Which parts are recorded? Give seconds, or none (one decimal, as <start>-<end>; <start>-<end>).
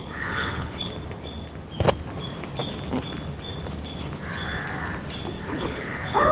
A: 0.9-5.3